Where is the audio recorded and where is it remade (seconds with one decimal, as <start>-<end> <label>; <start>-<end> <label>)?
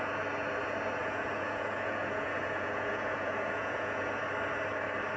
0.0-1.0 recorded; 1.0-4.1 remade; 4.1-5.2 recorded